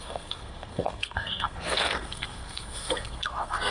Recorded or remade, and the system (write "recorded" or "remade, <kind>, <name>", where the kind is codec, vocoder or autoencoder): remade, codec, SNAC